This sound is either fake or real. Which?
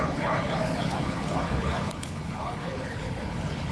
fake